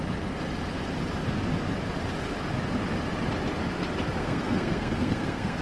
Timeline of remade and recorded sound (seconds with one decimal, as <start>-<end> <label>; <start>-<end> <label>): 0.0-4.2 recorded; 4.2-5.6 remade